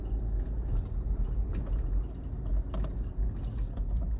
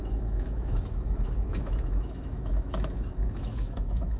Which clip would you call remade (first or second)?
second